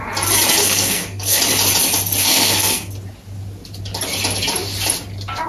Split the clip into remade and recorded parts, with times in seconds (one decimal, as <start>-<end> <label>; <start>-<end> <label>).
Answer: 0.0-0.6 recorded; 0.6-1.4 remade; 1.4-2.2 recorded; 2.2-2.9 remade; 2.9-5.5 recorded

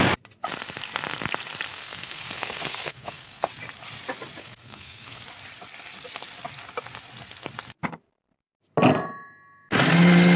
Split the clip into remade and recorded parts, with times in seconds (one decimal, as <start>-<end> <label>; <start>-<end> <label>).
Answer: 0.0-1.7 recorded; 1.7-3.5 remade; 3.5-4.4 recorded; 4.4-5.2 remade; 5.2-10.4 recorded

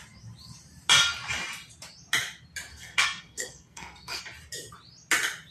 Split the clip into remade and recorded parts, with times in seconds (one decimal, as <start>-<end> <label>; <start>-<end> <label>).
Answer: 0.0-2.7 recorded; 2.7-4.2 remade; 4.2-5.5 recorded

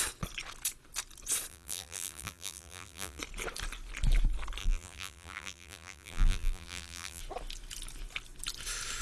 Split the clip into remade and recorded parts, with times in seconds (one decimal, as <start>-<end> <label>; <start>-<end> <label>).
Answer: 0.0-1.5 recorded; 1.5-3.2 remade; 3.2-4.6 recorded; 4.6-7.2 remade; 7.2-9.0 recorded

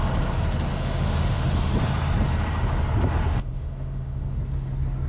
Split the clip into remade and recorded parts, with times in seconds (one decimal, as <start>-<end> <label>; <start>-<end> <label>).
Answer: 0.0-0.7 recorded; 0.7-1.7 remade; 1.7-3.3 recorded; 3.3-4.4 remade; 4.4-5.1 recorded

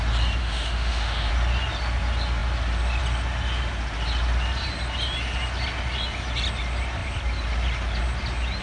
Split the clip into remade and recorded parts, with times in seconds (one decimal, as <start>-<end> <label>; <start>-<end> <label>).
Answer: 0.0-0.4 recorded; 0.4-1.3 remade; 1.3-8.6 recorded

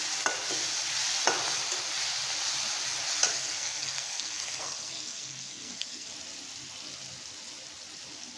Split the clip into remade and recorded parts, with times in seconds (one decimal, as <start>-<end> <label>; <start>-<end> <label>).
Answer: 0.0-3.3 recorded; 3.3-6.1 remade; 6.1-8.4 recorded